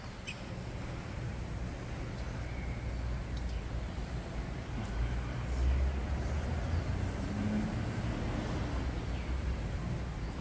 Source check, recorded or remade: recorded